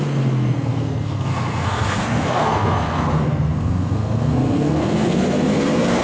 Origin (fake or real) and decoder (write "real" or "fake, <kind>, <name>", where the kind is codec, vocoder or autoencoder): fake, codec, SNAC